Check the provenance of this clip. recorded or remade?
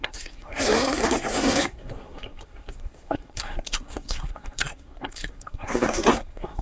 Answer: remade